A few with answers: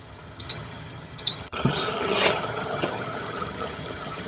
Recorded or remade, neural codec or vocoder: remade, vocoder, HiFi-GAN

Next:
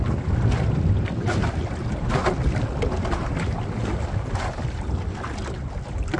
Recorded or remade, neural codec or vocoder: recorded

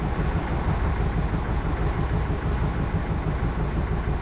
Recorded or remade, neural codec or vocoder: recorded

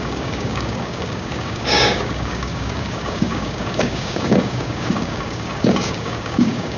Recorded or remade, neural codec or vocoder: remade, codec, DAC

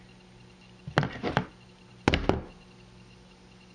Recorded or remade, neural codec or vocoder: recorded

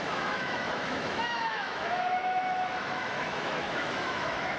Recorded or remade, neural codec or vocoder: remade, autoencoder, DAC-VAE